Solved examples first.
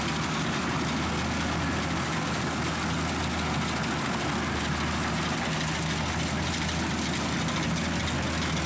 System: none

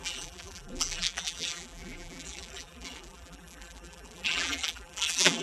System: vocoder, BigVGAN v2